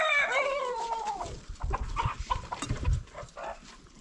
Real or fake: fake